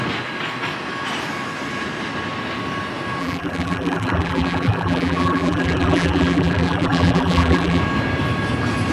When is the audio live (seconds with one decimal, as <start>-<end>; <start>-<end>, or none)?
0.0-3.2; 7.8-8.9